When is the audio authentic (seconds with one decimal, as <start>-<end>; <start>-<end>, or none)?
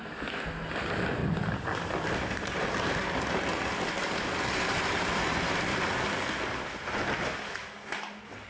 0.0-8.5